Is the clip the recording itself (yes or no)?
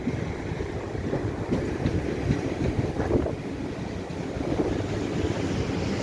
yes